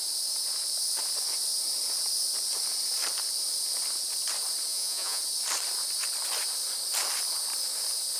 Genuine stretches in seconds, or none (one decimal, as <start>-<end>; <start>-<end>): 0.0-4.7; 5.2-8.2